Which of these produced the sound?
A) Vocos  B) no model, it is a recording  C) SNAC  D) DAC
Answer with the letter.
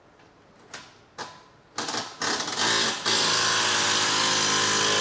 B